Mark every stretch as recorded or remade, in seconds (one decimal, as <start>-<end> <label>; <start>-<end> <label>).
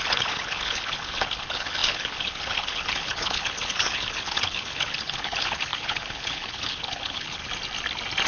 0.0-7.4 remade; 7.4-8.3 recorded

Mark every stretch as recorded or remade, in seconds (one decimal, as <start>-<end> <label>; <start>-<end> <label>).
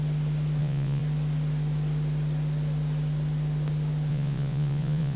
0.0-0.6 recorded; 0.6-1.0 remade; 1.0-4.1 recorded; 4.1-5.2 remade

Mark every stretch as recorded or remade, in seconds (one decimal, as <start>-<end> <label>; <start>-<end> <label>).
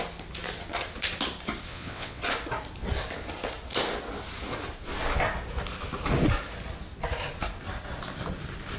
0.0-1.7 recorded; 1.7-2.2 remade; 2.2-8.8 recorded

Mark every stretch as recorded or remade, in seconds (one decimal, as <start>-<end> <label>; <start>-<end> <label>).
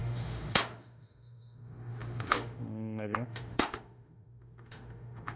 0.0-5.4 remade